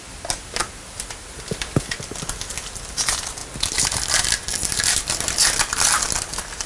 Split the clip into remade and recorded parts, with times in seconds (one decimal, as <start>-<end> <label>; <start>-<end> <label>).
0.0-6.7 recorded